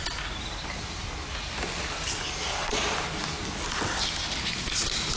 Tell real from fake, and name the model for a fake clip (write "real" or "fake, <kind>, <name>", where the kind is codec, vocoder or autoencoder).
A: real